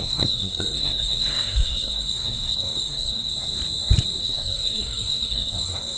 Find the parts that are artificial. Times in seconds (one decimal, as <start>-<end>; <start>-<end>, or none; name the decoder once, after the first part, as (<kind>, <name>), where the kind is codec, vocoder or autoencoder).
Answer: 0.0-3.3 (codec, SNAC); 4.2-6.0